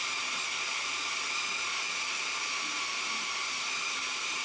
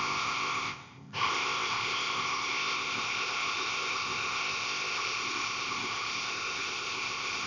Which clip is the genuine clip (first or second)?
first